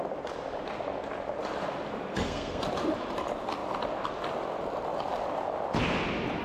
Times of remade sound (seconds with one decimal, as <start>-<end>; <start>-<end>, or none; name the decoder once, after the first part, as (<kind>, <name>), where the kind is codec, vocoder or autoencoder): 2.1-2.6 (codec, SNAC)